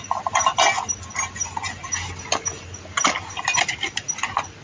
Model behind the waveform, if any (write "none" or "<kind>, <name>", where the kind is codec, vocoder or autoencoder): none